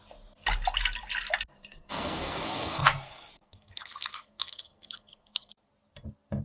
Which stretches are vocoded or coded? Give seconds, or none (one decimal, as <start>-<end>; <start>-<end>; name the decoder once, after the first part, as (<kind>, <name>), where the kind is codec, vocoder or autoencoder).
1.7-5.5 (codec, SNAC)